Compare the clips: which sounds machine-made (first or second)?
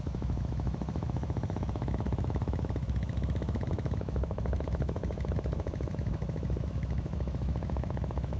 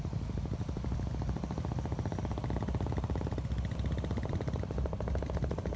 first